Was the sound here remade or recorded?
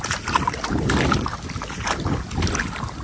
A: recorded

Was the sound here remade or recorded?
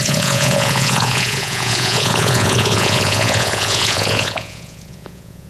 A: remade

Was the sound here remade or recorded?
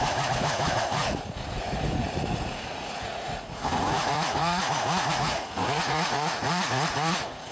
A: remade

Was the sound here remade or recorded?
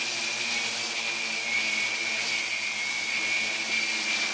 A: recorded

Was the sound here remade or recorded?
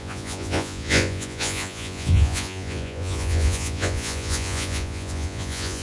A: remade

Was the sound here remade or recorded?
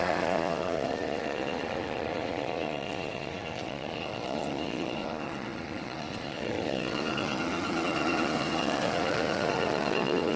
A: remade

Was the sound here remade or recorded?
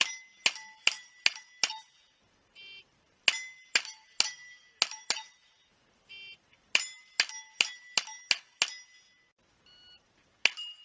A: recorded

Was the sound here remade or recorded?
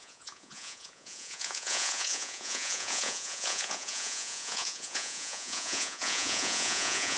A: remade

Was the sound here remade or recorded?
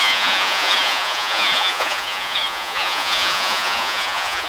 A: remade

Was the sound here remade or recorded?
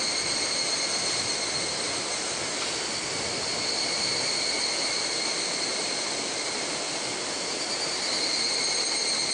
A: recorded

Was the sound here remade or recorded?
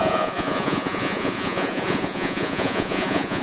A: remade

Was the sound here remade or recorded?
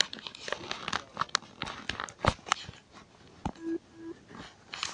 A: recorded